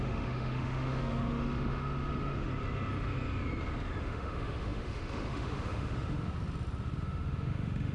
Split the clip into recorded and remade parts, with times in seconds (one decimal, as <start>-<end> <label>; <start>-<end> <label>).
0.0-2.5 remade; 2.5-4.0 recorded; 4.0-6.3 remade; 6.3-7.0 recorded; 7.0-7.9 remade